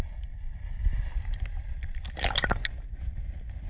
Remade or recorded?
recorded